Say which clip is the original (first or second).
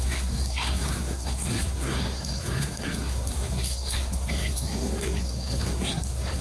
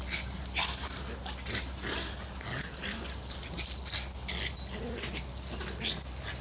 second